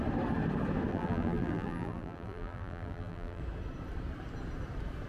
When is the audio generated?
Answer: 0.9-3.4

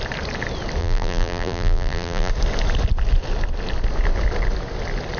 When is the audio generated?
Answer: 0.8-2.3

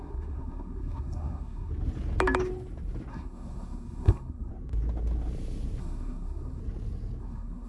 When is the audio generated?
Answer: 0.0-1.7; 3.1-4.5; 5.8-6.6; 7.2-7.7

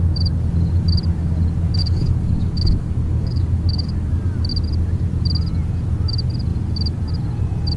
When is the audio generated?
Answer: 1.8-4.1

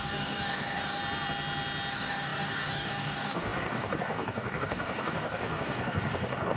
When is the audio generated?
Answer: 0.0-1.0; 1.9-6.6

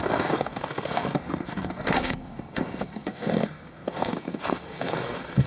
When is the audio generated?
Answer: 0.0-5.5